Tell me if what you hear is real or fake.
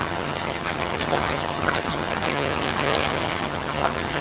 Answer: fake